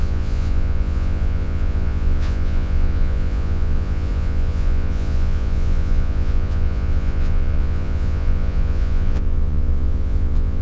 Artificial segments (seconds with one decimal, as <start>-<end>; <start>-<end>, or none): 0.0-10.6